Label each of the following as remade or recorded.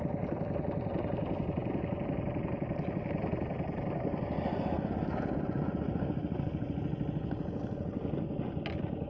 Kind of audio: recorded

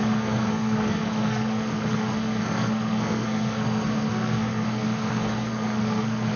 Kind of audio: remade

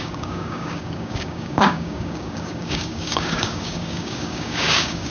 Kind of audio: remade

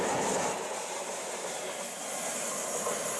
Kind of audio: recorded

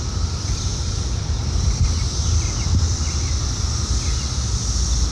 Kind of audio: recorded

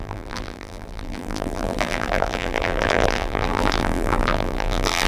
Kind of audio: remade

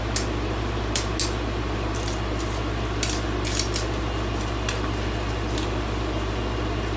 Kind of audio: recorded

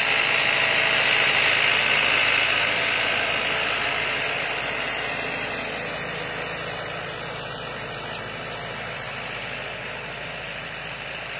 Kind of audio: recorded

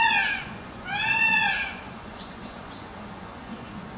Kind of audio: remade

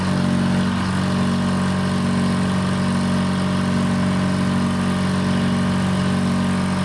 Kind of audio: recorded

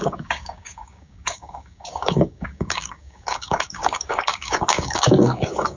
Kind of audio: remade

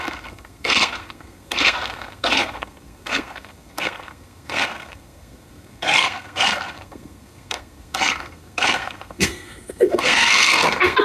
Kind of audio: remade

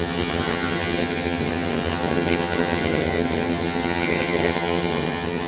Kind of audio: remade